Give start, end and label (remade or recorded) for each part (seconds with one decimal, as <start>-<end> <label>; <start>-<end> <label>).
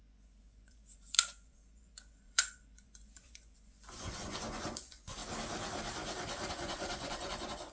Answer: 0.0-5.2 remade; 5.2-6.5 recorded; 6.5-7.7 remade